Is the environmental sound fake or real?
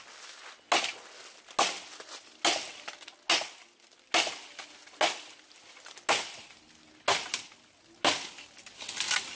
real